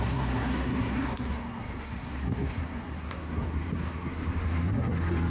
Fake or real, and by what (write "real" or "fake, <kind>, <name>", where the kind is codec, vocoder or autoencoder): fake, codec, SNAC